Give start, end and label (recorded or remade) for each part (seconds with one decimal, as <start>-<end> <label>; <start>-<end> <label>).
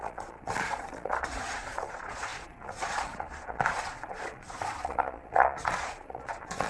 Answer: 0.0-6.7 remade